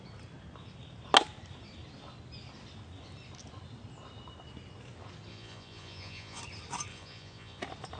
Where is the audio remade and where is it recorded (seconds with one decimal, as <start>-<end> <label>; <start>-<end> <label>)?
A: 0.0-5.3 recorded; 5.3-6.4 remade; 6.4-6.9 recorded; 6.9-7.6 remade; 7.6-8.0 recorded